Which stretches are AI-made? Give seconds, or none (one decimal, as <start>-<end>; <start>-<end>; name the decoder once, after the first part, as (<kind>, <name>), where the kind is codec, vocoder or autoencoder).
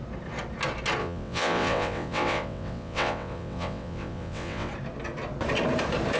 1.0-4.7 (vocoder, WaveNeXt)